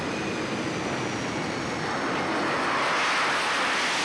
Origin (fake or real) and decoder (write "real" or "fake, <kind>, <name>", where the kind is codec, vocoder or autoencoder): real